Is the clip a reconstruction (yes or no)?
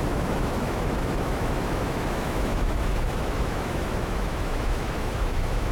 yes